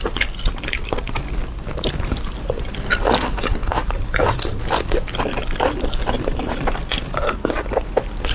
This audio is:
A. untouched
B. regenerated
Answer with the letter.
B